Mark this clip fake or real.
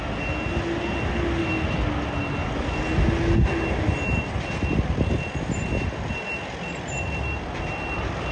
real